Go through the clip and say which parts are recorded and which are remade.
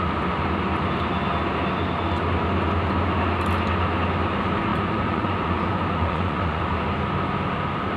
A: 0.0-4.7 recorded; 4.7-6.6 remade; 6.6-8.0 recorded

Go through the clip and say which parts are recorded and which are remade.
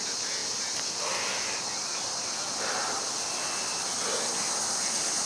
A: 0.0-5.3 recorded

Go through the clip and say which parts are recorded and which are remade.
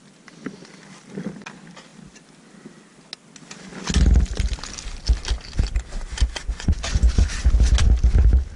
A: 0.0-6.4 recorded; 6.4-7.5 remade; 7.5-8.6 recorded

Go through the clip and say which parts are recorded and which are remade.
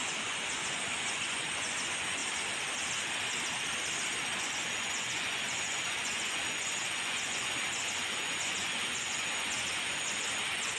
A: 0.0-2.2 remade; 2.2-4.4 recorded; 4.4-10.8 remade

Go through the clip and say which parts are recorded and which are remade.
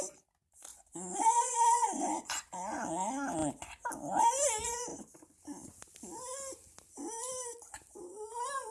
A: 0.0-0.7 recorded; 0.7-2.9 remade; 2.9-8.7 recorded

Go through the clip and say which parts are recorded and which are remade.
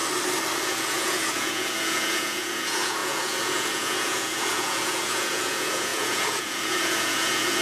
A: 0.0-0.6 recorded; 0.6-7.6 remade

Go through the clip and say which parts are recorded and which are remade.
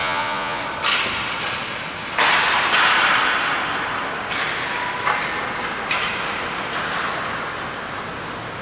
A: 0.0-0.6 remade; 0.6-8.6 recorded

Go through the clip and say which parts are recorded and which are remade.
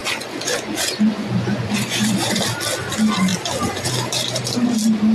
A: 0.0-2.4 remade; 2.4-5.1 recorded